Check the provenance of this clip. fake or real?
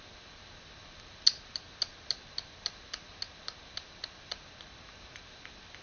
real